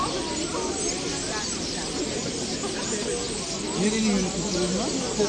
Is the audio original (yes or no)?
yes